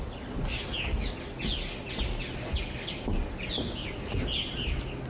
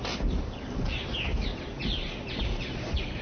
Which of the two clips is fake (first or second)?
second